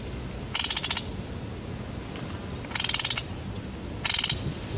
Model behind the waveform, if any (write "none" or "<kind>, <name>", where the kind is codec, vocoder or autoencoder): none